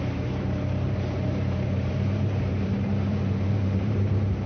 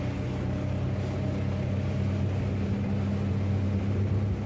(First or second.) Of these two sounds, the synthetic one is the first